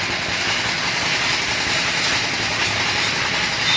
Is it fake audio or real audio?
real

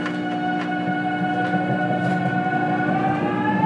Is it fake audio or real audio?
real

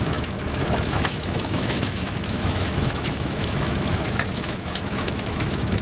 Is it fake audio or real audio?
fake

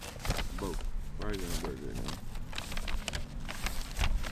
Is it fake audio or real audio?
real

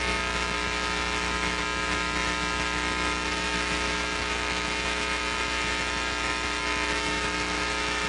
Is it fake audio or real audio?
fake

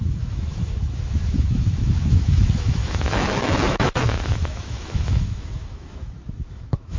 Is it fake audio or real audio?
fake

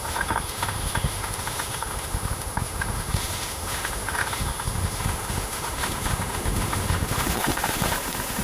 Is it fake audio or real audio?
fake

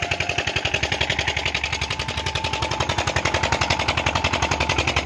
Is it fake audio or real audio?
real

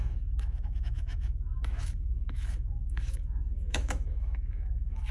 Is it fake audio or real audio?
fake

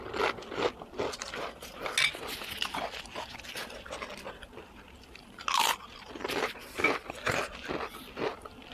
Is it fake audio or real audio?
real